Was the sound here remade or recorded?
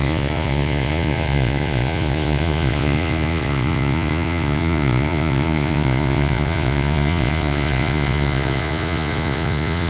remade